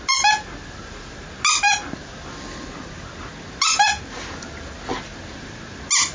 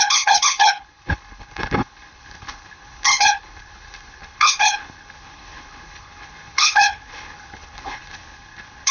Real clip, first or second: first